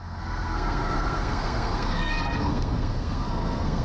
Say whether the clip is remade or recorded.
remade